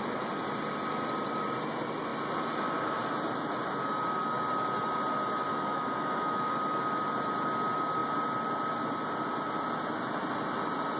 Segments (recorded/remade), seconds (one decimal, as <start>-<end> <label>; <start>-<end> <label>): 0.0-5.5 recorded; 5.5-6.5 remade; 6.5-11.0 recorded